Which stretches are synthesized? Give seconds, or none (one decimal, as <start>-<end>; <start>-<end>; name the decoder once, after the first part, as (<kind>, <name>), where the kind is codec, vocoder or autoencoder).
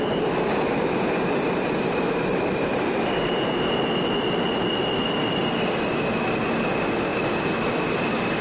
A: 7.1-7.7 (vocoder, BigVGAN v2)